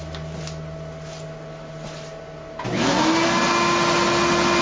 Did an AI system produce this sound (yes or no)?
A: no